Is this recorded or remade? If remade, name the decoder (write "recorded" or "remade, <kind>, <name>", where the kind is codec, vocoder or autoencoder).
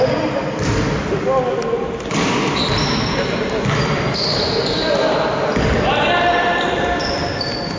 recorded